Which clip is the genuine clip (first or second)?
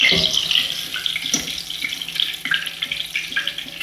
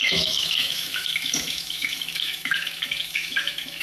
first